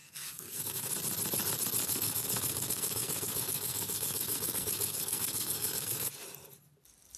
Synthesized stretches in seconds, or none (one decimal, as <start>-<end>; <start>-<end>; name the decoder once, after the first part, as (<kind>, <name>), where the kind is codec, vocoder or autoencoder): 0.0-0.9 (codec, SNAC); 1.8-6.1